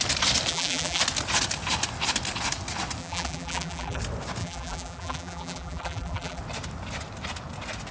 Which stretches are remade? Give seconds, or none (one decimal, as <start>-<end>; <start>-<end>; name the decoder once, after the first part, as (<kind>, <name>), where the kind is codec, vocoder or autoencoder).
0.5-1.0 (vocoder, BigVGAN v2); 3.0-4.0; 4.4-6.4